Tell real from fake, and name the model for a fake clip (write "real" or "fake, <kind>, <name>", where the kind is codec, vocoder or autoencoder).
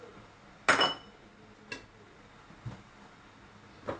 real